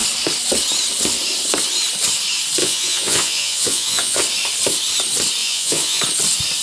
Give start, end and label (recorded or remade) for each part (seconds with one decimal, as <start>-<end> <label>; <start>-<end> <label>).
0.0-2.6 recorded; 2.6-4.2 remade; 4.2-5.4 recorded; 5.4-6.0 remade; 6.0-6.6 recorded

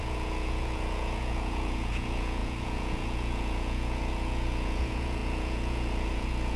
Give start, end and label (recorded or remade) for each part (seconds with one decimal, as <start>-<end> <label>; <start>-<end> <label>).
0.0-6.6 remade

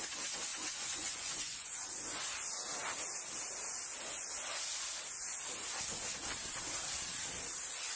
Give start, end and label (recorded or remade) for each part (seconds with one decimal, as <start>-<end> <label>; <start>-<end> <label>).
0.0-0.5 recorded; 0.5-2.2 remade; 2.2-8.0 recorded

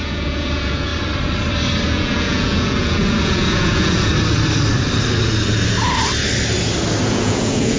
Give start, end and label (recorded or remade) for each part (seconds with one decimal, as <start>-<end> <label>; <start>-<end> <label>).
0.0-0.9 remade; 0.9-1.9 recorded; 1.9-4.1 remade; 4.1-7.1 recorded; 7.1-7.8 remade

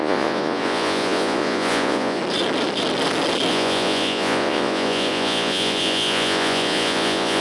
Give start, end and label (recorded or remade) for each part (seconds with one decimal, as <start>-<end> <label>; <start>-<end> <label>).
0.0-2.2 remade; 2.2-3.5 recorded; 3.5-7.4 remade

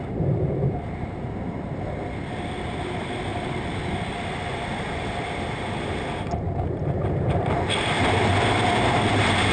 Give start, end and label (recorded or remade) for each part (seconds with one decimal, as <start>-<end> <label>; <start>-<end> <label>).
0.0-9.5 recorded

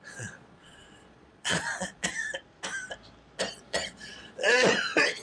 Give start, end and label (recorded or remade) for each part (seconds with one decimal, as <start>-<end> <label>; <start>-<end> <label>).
0.0-2.1 remade; 2.1-3.5 recorded; 3.5-5.2 remade